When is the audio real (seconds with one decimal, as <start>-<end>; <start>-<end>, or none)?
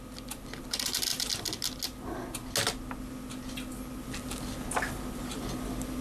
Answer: 0.0-6.0